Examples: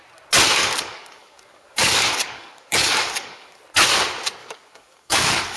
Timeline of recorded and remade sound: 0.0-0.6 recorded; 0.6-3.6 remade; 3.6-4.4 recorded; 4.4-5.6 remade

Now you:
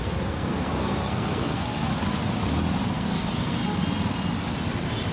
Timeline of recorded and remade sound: 0.0-1.9 remade; 1.9-2.9 recorded; 2.9-3.6 remade; 3.6-5.1 recorded

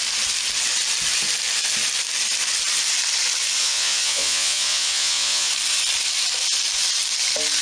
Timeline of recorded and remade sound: 0.0-3.6 recorded; 3.6-5.5 remade; 5.5-7.6 recorded